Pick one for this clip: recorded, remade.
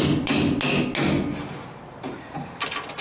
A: recorded